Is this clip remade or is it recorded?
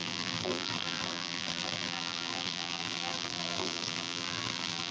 remade